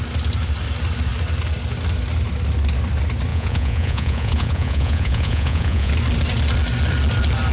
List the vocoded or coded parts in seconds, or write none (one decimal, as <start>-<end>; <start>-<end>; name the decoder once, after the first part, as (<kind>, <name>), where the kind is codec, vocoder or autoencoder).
3.3-5.9 (vocoder, Vocos)

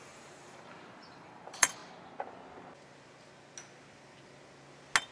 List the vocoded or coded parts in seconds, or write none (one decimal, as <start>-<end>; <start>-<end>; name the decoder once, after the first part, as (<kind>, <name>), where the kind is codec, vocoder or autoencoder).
0.0-1.8 (vocoder, BigVGAN v2)